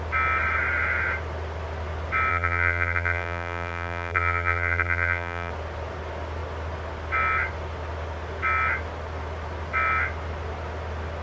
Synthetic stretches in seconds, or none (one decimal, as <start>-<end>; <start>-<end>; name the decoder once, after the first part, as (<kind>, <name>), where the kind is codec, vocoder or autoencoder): 2.3-5.5 (vocoder, BigVGAN v2)